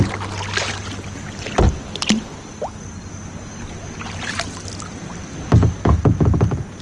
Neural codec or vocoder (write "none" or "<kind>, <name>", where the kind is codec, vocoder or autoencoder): none